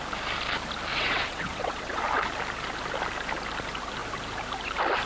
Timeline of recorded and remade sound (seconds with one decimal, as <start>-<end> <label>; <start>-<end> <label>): 0.0-0.9 recorded; 0.9-2.0 remade; 2.0-5.1 recorded